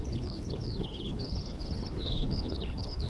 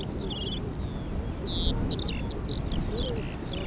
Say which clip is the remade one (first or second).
first